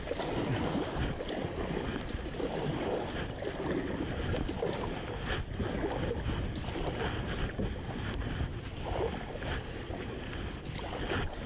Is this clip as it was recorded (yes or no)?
yes